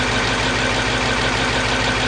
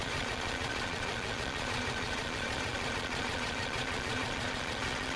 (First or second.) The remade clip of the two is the second